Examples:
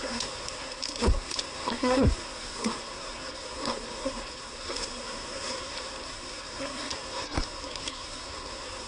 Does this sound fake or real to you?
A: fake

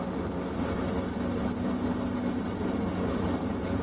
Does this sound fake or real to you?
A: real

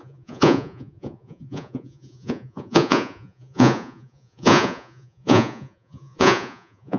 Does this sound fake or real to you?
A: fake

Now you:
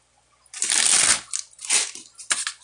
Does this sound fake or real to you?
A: real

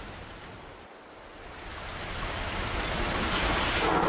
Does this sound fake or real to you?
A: real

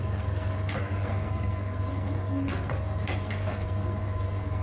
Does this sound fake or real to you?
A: fake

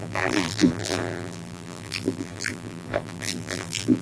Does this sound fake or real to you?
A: fake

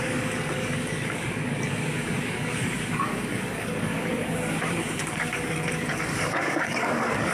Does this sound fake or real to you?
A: fake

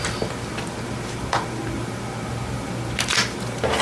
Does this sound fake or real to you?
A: real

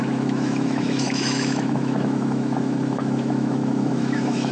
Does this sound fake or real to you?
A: fake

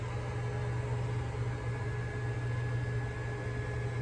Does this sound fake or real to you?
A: real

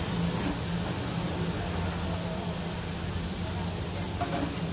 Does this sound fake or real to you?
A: real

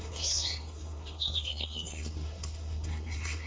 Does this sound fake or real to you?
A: fake